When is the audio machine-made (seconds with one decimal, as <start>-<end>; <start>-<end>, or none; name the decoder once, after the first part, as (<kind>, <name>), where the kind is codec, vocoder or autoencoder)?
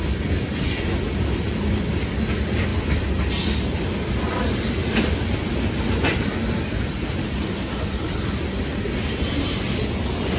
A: none